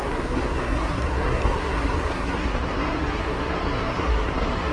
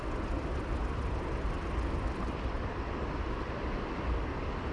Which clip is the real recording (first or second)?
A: second